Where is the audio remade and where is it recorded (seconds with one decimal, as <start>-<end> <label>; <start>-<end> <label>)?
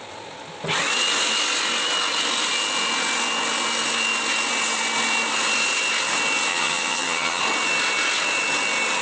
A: 0.0-6.5 recorded; 6.5-7.4 remade; 7.4-9.0 recorded